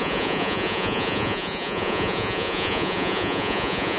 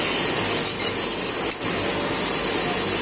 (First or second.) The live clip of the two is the second